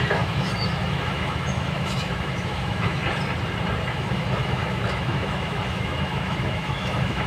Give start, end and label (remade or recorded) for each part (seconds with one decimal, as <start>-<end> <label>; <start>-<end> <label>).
0.0-3.0 remade; 3.0-3.9 recorded; 3.9-7.3 remade